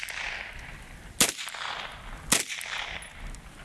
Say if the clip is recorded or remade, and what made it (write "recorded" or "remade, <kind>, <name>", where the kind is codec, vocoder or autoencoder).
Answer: recorded